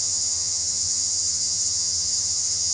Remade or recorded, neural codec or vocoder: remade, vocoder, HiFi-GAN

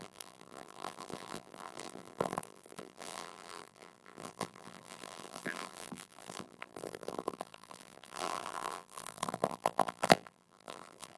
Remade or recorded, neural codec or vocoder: remade, vocoder, BigVGAN v2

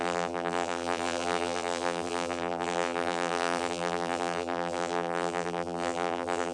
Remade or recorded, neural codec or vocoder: remade, vocoder, BigVGAN v2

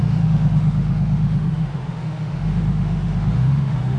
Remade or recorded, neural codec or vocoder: remade, autoencoder, DAC-VAE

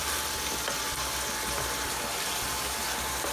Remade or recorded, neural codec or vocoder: recorded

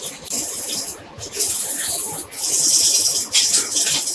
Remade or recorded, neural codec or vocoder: recorded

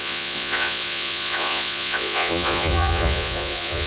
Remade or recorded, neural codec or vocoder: remade, vocoder, Vocos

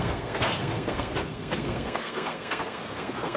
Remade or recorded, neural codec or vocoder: remade, codec, SNAC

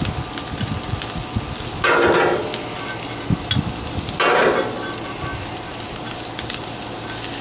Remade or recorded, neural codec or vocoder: recorded